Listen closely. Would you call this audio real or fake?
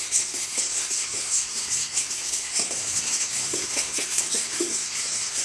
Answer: fake